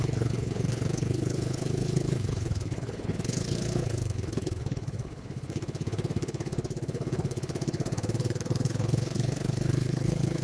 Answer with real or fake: fake